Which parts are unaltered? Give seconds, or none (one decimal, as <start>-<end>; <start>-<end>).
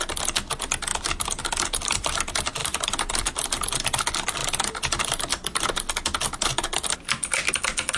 0.0-0.9; 2.1-2.6; 3.4-8.0